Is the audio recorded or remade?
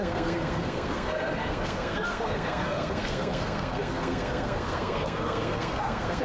remade